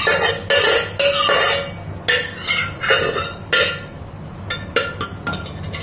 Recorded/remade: recorded